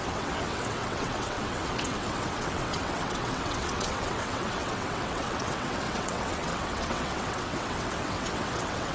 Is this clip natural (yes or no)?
no